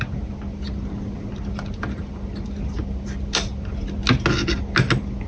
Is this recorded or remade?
recorded